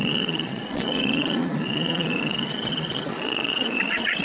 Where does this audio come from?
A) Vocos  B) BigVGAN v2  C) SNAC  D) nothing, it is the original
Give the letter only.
A